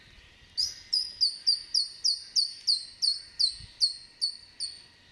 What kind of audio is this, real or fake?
real